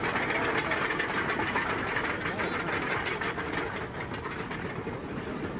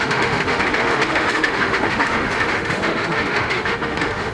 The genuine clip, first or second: first